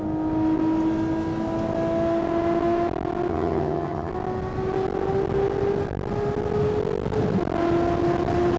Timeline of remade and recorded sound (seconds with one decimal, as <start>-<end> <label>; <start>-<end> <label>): 0.0-3.3 recorded; 3.3-4.1 remade; 4.1-8.6 recorded